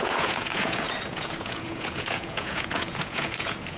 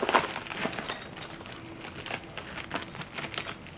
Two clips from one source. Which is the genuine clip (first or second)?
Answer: second